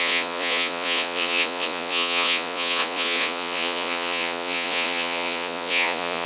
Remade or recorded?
remade